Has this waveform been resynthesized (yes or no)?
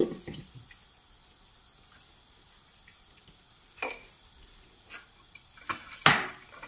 no